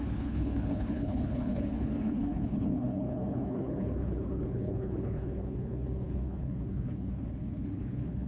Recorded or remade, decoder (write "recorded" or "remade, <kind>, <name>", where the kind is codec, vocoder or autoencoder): remade, codec, HILCodec